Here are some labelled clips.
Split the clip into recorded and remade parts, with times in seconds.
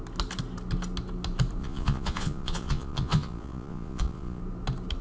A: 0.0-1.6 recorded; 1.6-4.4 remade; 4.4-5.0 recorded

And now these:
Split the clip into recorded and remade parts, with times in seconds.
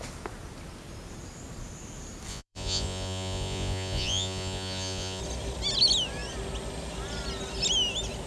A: 0.0-2.3 recorded; 2.3-5.2 remade; 5.2-8.3 recorded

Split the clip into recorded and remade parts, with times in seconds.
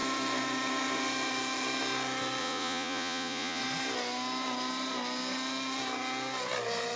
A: 0.0-2.4 recorded; 2.4-3.6 remade; 3.6-7.0 recorded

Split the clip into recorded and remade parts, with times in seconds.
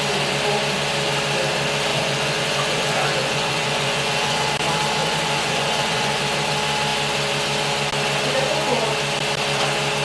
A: 0.0-1.9 recorded; 1.9-4.5 remade; 4.5-5.0 recorded; 5.0-6.2 remade; 6.2-10.0 recorded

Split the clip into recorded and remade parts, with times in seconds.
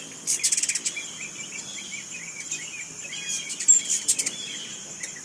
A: 0.0-5.2 recorded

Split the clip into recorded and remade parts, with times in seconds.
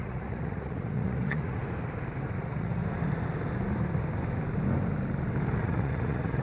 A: 0.0-1.6 remade; 1.6-2.4 recorded; 2.4-2.8 remade; 2.8-5.6 recorded; 5.6-6.4 remade